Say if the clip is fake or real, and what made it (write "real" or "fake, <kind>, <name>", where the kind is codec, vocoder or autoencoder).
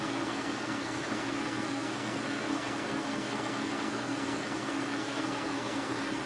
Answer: fake, codec, SNAC